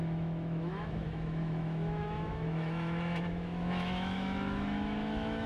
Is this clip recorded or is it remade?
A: remade